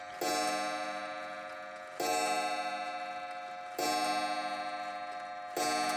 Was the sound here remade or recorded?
recorded